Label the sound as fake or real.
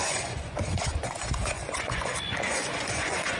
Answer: fake